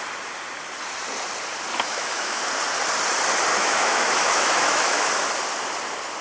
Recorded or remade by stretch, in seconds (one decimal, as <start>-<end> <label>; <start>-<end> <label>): 0.0-1.7 recorded; 1.7-2.4 remade; 2.4-3.5 recorded; 3.5-5.1 remade; 5.1-6.2 recorded